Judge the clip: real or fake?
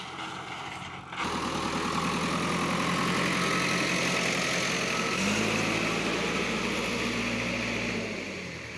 real